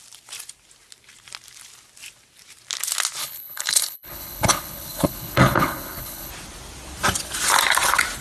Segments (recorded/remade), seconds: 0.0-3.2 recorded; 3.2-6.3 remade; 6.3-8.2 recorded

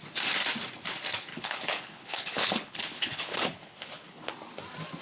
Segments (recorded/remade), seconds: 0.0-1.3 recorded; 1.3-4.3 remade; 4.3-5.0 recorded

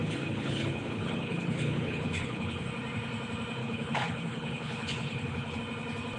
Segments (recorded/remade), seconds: 0.0-2.7 remade; 2.7-3.6 recorded; 3.6-5.6 remade; 5.6-6.2 recorded